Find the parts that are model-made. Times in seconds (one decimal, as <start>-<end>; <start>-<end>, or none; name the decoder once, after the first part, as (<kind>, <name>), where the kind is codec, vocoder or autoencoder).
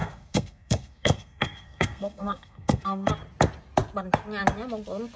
0.0-3.1 (codec, SNAC)